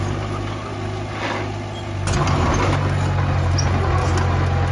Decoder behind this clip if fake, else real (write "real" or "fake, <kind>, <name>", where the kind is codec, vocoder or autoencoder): real